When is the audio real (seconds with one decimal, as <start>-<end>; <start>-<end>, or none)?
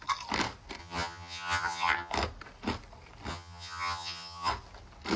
0.0-0.8; 2.1-3.3; 4.5-5.2